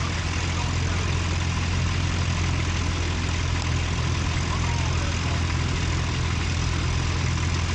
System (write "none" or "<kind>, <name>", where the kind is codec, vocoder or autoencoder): none